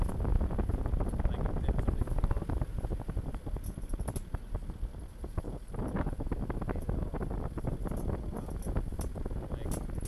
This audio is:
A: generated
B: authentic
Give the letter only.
B